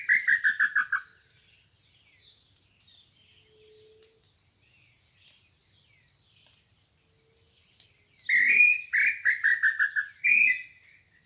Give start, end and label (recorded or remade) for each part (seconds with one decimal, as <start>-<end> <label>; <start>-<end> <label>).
0.0-11.3 recorded

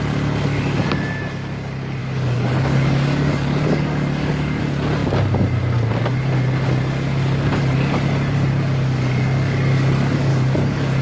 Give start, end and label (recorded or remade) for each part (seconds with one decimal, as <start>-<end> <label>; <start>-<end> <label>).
0.0-2.0 recorded; 2.0-4.6 remade; 4.6-10.3 recorded; 10.3-11.0 remade